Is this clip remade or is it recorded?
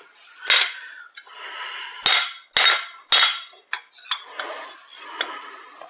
recorded